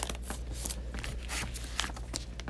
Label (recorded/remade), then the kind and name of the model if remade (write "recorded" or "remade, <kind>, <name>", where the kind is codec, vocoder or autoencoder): recorded